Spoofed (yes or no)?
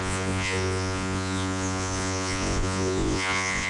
yes